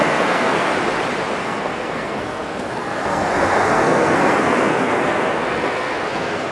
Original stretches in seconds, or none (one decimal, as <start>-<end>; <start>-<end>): 0.7-1.4